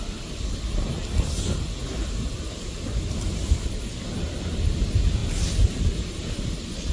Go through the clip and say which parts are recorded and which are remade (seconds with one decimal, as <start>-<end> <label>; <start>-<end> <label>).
0.0-6.9 recorded